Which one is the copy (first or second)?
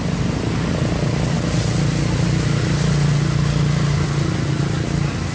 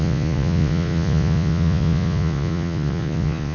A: second